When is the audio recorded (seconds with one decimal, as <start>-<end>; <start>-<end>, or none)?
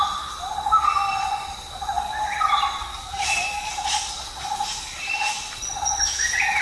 0.0-2.8; 3.7-6.6